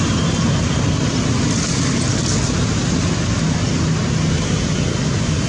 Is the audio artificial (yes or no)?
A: no